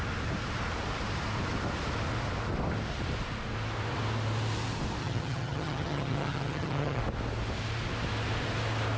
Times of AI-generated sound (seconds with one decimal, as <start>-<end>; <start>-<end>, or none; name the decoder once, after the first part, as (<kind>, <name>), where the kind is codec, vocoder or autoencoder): 5.0-7.0 (vocoder, HiFi-GAN)